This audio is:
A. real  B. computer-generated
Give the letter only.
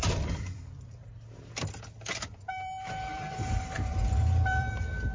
B